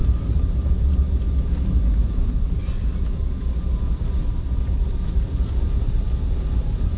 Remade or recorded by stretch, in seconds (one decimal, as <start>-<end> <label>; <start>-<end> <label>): 0.0-1.8 recorded; 1.8-2.9 remade; 2.9-4.4 recorded; 4.4-7.0 remade